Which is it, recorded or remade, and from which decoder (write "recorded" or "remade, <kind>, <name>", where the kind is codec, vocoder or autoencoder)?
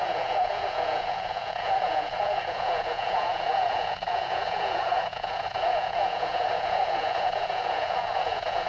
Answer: remade, vocoder, Vocos